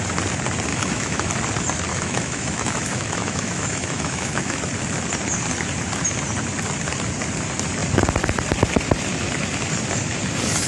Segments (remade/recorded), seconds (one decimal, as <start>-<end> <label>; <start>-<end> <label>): 0.0-0.7 recorded; 0.7-1.3 remade; 1.3-1.9 recorded; 1.9-4.6 remade; 4.6-10.7 recorded